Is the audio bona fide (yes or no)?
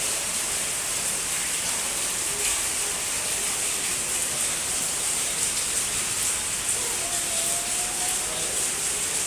yes